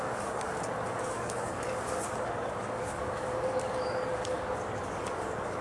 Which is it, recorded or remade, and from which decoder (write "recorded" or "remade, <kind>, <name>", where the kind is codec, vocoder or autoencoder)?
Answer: remade, codec, DAC